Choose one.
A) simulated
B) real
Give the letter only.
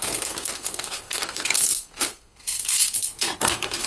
A